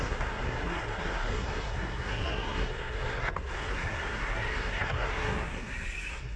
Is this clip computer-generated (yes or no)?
yes